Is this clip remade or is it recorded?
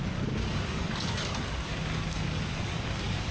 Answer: remade